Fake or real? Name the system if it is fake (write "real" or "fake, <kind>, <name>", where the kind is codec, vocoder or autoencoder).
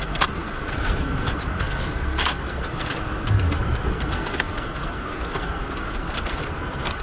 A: fake, codec, SNAC